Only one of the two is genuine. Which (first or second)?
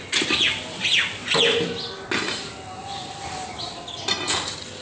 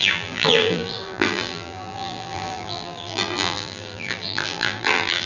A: first